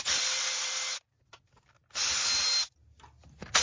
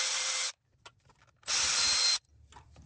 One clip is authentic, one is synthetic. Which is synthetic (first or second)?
second